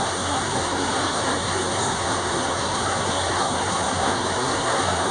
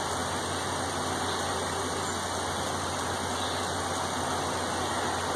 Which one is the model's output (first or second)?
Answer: first